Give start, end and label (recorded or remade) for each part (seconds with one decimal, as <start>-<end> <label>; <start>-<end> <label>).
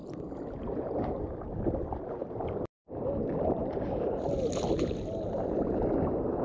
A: 0.0-0.8 remade; 0.8-2.2 recorded; 2.2-6.0 remade; 6.0-6.4 recorded